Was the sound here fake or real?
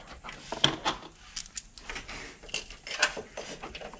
real